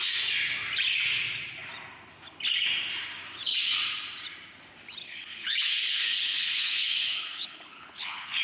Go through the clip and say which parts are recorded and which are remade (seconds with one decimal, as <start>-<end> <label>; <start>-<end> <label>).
0.0-5.0 recorded; 5.0-8.4 remade